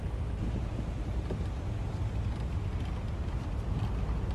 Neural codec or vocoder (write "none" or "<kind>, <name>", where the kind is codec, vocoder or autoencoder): none